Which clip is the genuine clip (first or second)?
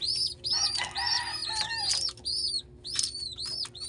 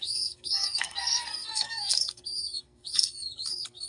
first